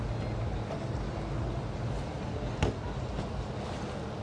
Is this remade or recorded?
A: recorded